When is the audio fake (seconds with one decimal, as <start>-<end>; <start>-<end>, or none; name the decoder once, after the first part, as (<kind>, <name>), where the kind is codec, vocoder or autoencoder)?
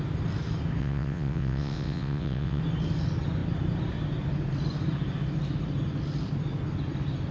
0.8-2.6 (vocoder, WaveNeXt)